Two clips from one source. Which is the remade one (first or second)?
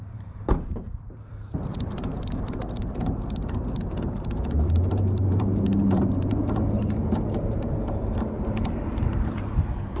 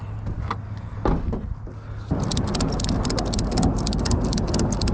first